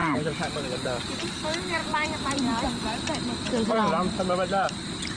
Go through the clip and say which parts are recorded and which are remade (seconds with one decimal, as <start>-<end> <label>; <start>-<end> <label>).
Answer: 0.0-0.6 remade; 0.6-5.2 recorded